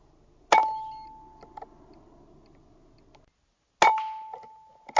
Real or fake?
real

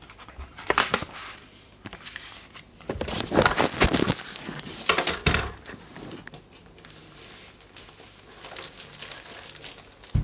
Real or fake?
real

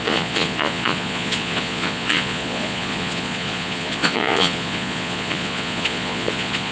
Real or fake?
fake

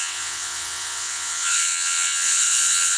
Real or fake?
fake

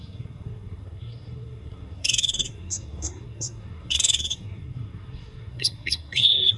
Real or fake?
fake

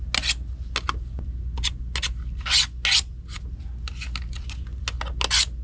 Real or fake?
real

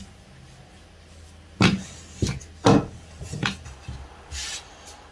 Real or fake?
real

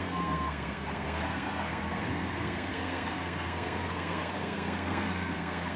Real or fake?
fake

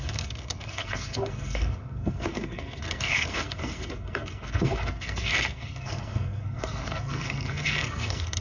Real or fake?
fake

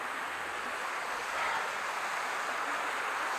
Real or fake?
real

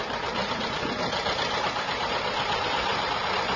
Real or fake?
fake